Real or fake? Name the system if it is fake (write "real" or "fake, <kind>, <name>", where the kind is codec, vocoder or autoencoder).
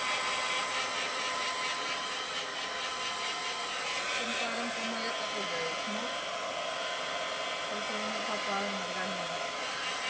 real